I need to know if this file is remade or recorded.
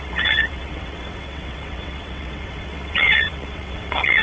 remade